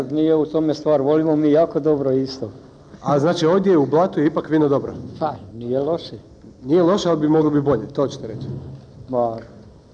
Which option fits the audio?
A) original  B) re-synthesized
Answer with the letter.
A